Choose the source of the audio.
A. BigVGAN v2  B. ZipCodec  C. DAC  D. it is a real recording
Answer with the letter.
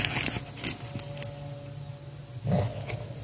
D